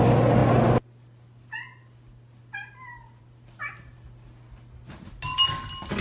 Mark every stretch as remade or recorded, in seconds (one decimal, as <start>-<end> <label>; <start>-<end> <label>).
0.0-6.0 recorded